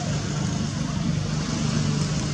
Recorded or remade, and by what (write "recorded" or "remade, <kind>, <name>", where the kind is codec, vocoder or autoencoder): recorded